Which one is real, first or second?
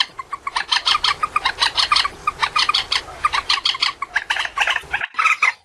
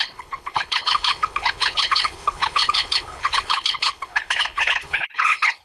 first